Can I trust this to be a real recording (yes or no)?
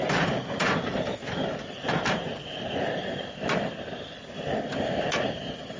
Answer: no